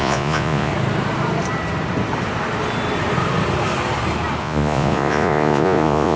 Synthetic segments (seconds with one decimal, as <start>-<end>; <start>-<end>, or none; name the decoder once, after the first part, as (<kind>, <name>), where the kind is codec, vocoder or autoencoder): 0.0-0.7 (vocoder, Vocos); 4.4-6.2